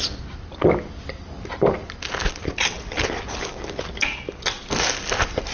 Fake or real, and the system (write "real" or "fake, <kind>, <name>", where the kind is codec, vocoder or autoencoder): real